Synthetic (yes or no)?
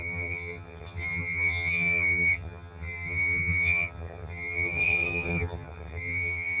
yes